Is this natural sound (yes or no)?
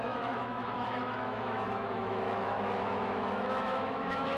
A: no